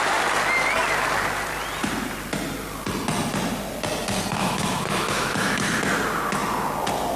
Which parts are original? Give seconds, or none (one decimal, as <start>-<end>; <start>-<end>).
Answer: 0.0-4.4; 5.8-7.2